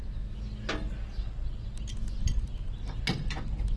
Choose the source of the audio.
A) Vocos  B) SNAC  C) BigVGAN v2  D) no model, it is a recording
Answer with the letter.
D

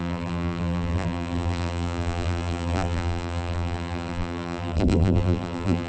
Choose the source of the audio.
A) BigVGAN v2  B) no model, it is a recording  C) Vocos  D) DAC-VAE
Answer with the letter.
A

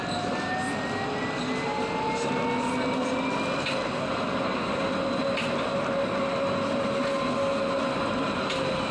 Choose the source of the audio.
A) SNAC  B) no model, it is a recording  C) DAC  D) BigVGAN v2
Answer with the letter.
B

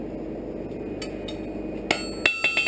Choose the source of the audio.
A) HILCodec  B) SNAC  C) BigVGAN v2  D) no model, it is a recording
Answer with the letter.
D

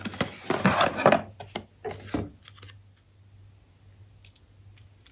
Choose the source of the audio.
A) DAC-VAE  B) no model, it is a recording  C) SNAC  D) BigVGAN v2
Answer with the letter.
B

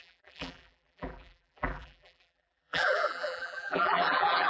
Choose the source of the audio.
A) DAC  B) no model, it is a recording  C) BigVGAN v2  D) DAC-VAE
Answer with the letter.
C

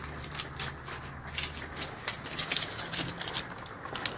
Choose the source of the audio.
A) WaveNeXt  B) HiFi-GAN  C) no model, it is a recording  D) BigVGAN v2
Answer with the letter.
C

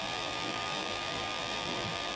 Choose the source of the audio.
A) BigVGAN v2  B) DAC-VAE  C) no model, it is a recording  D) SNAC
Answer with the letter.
A